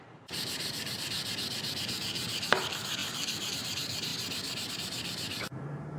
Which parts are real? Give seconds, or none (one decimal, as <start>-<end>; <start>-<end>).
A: 1.2-1.8; 4.1-4.7